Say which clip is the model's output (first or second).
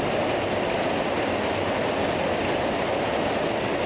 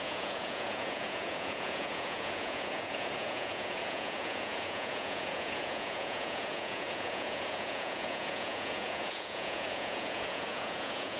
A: second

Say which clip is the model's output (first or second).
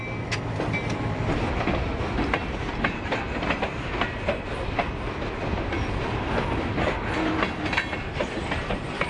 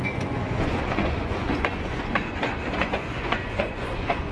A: second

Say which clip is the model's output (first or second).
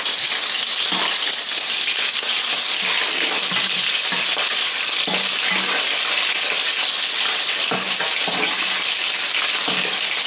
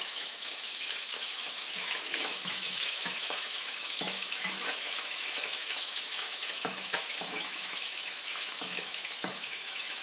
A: second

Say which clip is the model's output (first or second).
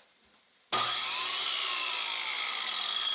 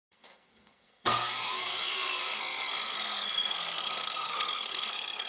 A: second